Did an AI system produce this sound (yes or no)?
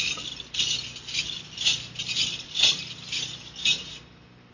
no